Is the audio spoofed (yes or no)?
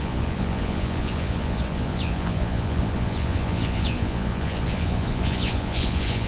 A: yes